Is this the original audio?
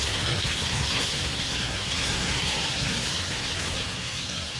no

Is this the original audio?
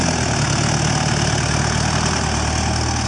yes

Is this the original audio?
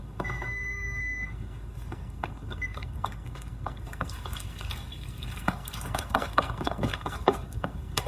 no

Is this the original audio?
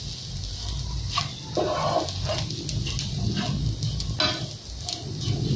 yes